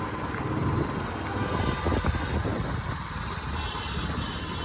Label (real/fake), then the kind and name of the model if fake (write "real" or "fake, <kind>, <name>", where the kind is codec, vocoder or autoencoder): real